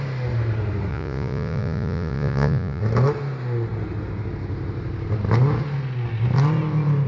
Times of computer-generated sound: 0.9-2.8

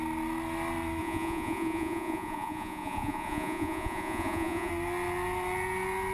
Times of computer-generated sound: 1.0-4.7

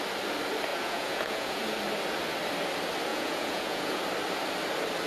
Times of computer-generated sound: 0.7-1.6; 3.1-4.0

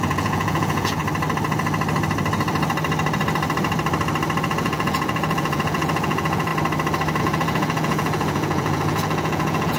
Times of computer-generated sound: 0.0-1.0; 4.4-6.5; 7.2-9.8

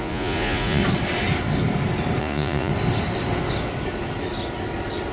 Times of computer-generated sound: 0.0-0.8; 2.2-2.7

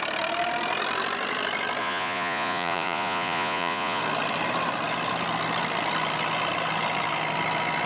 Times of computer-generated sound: 1.8-4.0